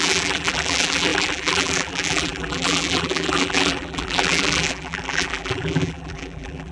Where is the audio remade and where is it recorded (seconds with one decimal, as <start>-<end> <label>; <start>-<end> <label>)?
0.0-6.7 remade